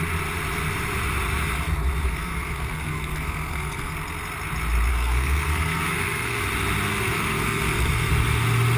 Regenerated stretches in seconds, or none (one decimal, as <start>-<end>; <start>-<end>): 2.0-3.9; 4.9-6.4; 6.9-8.1